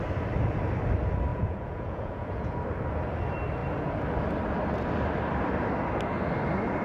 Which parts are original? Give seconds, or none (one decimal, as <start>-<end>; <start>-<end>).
0.0-1.3; 2.5-6.8